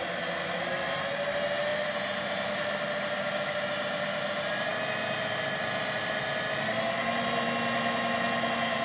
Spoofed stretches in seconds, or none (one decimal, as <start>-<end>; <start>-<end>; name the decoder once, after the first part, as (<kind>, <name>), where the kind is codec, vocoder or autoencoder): 1.7-2.5 (vocoder, BigVGAN v2)

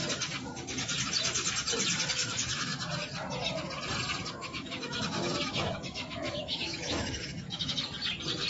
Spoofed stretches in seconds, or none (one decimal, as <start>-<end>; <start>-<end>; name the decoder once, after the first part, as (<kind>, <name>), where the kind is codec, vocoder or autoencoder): 2.2-2.8 (autoencoder, DAC-VAE); 4.4-7.8

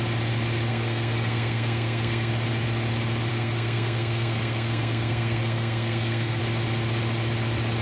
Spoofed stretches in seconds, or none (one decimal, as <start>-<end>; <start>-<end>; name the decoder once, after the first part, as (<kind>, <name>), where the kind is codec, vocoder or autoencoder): 0.7-2.3 (codec, SNAC); 3.3-6.4

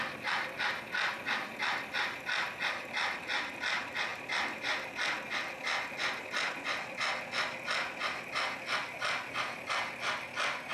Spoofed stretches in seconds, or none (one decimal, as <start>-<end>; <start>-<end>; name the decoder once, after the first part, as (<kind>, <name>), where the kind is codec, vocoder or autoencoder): none

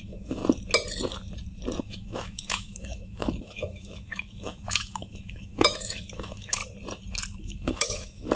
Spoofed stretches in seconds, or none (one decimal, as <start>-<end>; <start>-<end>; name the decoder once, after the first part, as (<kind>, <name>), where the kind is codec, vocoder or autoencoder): 0.0-0.4 (autoencoder, DAC-VAE); 1.8-6.6; 7.4-8.4

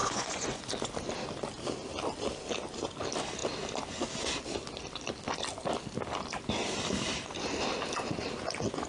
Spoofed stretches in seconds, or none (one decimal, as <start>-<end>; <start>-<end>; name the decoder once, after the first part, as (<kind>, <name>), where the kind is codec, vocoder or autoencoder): 0.0-0.6 (vocoder, Vocos)